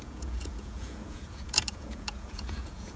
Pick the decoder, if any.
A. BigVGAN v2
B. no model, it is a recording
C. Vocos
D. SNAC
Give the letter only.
C